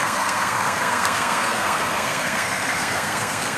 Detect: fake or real fake